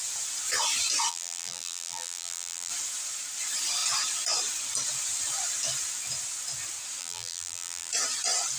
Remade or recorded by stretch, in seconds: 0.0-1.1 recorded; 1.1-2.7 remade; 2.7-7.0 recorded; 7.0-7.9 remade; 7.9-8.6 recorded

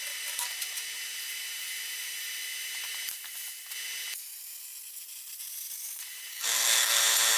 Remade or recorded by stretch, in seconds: 0.0-6.3 recorded; 6.3-7.0 remade; 7.0-7.4 recorded

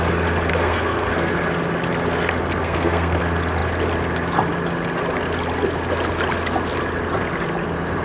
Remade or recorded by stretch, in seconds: 0.0-0.5 recorded; 0.5-1.3 remade; 1.3-2.6 recorded; 2.6-3.2 remade; 3.2-8.0 recorded